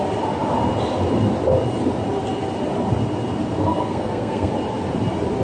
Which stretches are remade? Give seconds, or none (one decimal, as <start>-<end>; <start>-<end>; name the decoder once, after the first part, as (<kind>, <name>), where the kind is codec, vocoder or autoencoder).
3.5-4.5 (codec, SNAC)